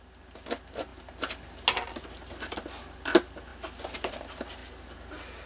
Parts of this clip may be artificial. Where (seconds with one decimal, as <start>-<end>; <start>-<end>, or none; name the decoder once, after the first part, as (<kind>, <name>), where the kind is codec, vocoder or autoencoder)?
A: none